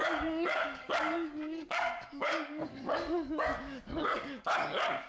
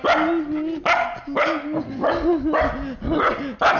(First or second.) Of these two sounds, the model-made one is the first